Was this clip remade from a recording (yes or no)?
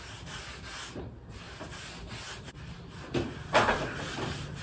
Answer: no